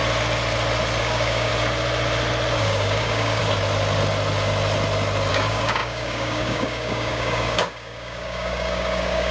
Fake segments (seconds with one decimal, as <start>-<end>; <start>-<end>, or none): 1.0-1.5; 2.6-3.4; 5.3-9.3